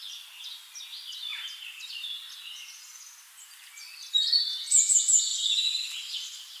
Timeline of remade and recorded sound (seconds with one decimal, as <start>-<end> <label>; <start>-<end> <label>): 0.0-1.3 recorded; 1.3-1.9 remade; 1.9-6.6 recorded